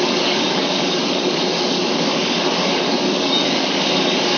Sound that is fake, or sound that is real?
fake